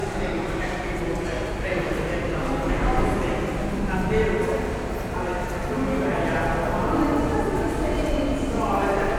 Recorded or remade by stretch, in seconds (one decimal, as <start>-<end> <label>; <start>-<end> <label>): 0.0-9.2 recorded